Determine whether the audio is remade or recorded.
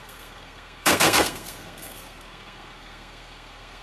remade